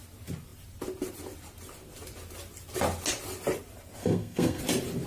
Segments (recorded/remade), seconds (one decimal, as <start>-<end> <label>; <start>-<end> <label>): 0.0-4.0 recorded; 4.0-4.6 remade; 4.6-5.1 recorded